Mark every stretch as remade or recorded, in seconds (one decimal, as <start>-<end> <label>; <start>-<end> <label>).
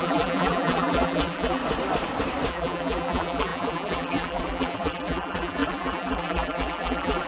0.0-1.6 remade; 1.6-2.5 recorded; 2.5-7.3 remade